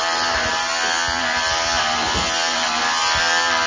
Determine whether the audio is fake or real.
fake